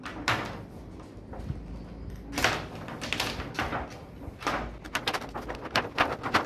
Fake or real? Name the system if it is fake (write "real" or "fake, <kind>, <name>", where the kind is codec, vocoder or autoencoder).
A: real